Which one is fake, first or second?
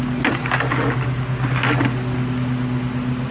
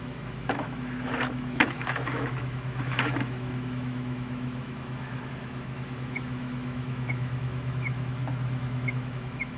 second